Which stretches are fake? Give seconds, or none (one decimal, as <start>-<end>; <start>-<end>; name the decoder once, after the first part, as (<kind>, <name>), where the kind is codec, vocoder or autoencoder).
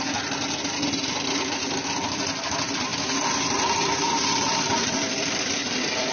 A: none